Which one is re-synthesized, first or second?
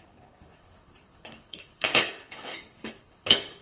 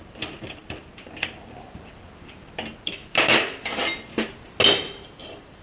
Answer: first